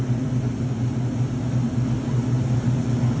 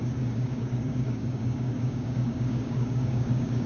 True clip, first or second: first